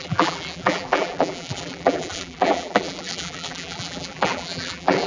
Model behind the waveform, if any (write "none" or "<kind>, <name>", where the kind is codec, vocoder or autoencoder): vocoder, BigVGAN v2